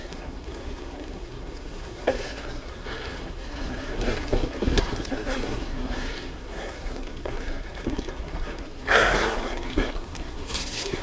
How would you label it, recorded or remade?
remade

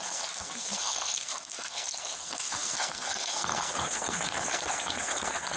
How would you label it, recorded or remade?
remade